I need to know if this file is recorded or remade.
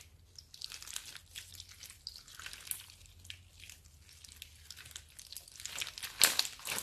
recorded